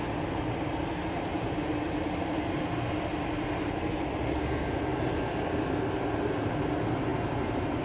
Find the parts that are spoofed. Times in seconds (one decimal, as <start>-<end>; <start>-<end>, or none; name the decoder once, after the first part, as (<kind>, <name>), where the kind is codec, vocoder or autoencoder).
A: none